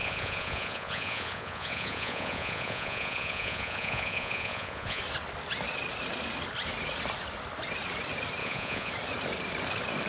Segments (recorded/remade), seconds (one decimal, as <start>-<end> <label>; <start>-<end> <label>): 0.0-5.0 remade; 5.0-8.4 recorded; 8.4-8.9 remade; 8.9-10.1 recorded